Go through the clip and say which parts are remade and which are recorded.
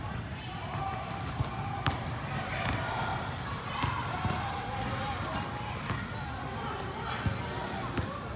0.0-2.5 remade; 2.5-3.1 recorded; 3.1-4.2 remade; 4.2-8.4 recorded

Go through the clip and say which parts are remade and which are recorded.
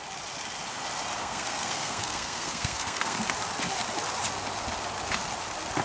0.0-1.2 recorded; 1.2-3.2 remade; 3.2-5.8 recorded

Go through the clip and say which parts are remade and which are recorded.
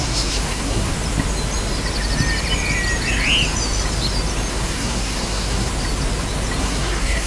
0.0-0.9 remade; 0.9-4.5 recorded; 4.5-5.7 remade; 5.7-6.6 recorded; 6.6-7.3 remade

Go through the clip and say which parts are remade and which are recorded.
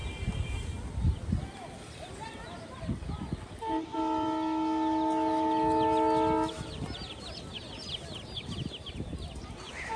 0.0-10.0 recorded